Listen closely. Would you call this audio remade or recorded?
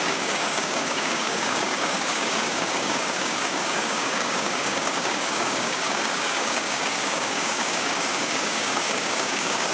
remade